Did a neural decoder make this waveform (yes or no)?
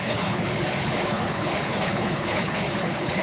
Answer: yes